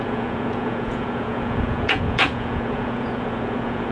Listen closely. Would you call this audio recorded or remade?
remade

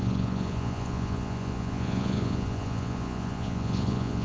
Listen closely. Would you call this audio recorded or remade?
remade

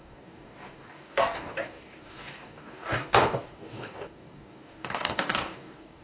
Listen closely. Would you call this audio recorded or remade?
remade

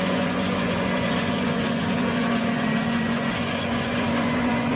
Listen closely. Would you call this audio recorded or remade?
remade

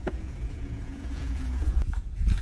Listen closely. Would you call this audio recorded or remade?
remade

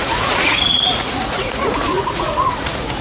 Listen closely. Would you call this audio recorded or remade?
remade